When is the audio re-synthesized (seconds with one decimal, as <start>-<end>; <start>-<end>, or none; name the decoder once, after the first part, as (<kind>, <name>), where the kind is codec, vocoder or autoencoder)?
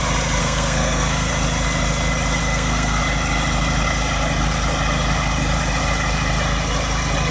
0.4-1.3 (codec, SNAC); 2.4-3.0